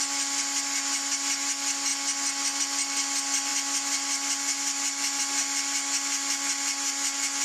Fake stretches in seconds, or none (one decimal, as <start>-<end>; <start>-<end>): none